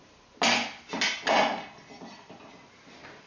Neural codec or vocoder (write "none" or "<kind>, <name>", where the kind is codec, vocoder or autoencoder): none